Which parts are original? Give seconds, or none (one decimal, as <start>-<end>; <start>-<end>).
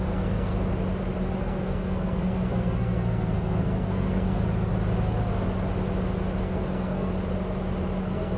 0.5-1.4; 4.7-6.4; 7.1-8.0